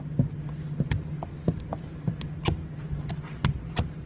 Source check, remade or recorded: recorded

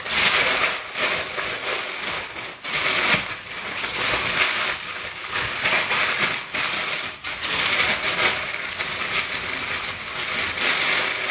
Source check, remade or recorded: recorded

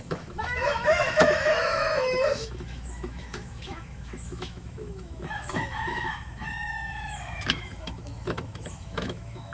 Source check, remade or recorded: remade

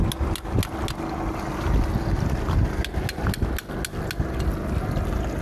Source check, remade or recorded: recorded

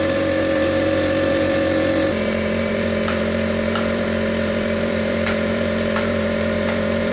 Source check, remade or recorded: remade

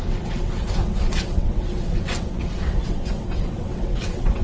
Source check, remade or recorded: remade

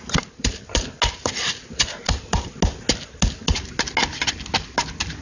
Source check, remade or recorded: recorded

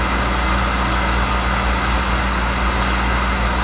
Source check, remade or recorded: recorded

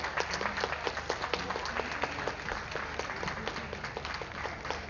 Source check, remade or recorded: recorded